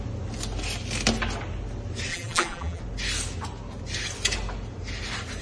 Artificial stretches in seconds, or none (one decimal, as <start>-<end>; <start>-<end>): 2.1-2.8